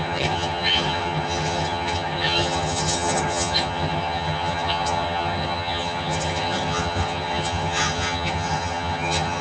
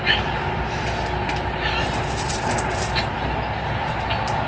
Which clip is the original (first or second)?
second